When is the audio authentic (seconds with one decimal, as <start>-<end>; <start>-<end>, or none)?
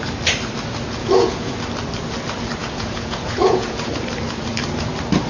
0.0-1.0; 1.5-2.6; 3.9-5.3